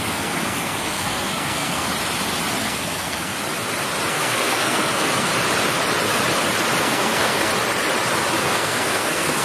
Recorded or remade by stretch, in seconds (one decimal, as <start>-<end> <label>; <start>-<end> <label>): 0.0-1.9 remade; 1.9-2.6 recorded; 2.6-3.3 remade; 3.3-4.1 recorded; 4.1-5.3 remade; 5.3-6.8 recorded; 6.8-7.5 remade; 7.5-8.4 recorded; 8.4-9.4 remade